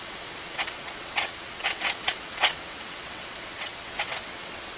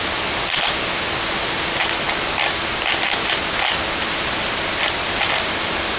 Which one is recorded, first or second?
second